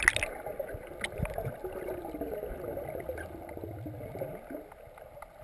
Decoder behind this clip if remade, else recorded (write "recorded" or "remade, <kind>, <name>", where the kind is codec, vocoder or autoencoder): recorded